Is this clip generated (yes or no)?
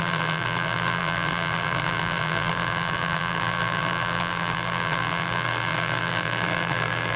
yes